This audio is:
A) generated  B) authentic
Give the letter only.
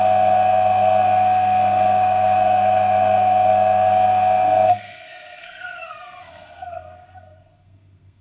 A